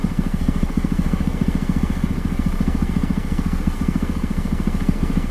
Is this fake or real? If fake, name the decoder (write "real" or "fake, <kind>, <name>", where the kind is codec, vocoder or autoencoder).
fake, codec, SNAC